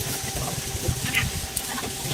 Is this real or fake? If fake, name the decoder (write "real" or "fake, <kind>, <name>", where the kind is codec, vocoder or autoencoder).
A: real